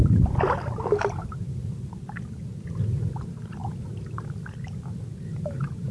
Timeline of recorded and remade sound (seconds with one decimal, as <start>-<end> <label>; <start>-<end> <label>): 0.0-5.9 recorded

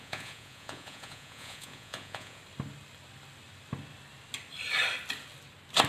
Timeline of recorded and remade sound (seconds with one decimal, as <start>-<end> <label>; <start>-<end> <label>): 0.0-2.4 remade; 2.4-5.9 recorded

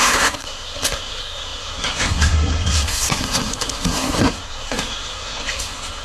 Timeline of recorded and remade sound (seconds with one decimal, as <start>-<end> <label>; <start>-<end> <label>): 0.0-6.0 remade

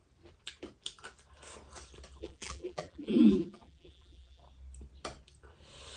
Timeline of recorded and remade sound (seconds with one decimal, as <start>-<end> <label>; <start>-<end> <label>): 0.0-2.2 recorded; 2.2-4.4 remade; 4.4-6.0 recorded

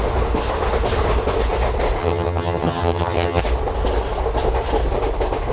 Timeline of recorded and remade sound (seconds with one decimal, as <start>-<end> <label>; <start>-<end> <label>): 0.0-2.0 recorded; 2.0-3.4 remade; 3.4-5.5 recorded

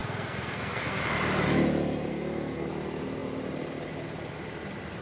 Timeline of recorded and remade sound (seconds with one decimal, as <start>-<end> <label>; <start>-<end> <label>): 0.0-1.0 remade; 1.0-2.1 recorded; 2.1-2.7 remade; 2.7-5.0 recorded

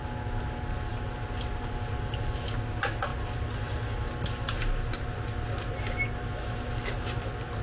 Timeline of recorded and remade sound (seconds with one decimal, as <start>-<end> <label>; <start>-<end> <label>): 0.0-7.6 recorded

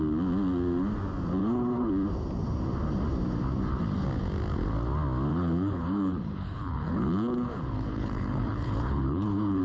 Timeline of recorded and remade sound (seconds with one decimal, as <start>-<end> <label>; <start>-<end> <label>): 0.0-1.4 recorded; 1.4-1.9 remade; 1.9-5.3 recorded; 5.3-9.6 remade